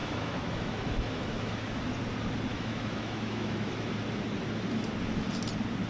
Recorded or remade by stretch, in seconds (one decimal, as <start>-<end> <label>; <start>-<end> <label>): 0.0-1.8 remade; 1.8-2.5 recorded; 2.5-4.0 remade; 4.0-5.9 recorded